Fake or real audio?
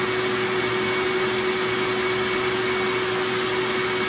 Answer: real